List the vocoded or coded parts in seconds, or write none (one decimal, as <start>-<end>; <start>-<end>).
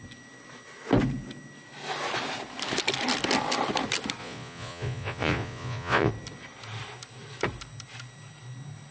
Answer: 4.2-6.1